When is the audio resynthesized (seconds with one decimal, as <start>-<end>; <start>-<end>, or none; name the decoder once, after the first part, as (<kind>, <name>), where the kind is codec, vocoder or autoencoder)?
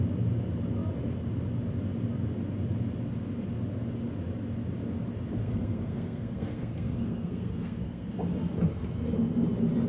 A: 5.4-8.1 (codec, SNAC)